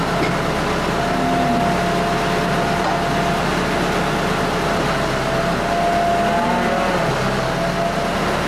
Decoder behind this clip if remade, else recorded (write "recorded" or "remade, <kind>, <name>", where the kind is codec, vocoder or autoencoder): recorded